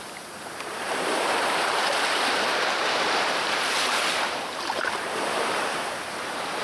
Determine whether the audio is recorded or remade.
remade